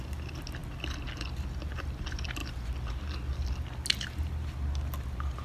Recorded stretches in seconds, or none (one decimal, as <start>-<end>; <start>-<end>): 0.0-5.4

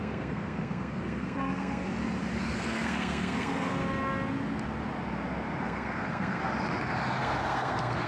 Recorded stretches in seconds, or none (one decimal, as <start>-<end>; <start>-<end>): 1.8-2.4; 3.8-5.6; 6.4-7.1

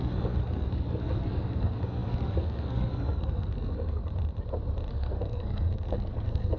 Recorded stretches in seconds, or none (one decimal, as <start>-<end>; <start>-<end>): 4.0-4.9

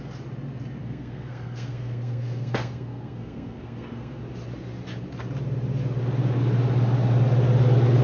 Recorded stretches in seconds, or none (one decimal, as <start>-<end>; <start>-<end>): 0.0-0.8; 4.2-8.0